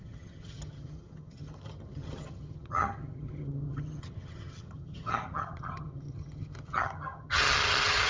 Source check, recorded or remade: remade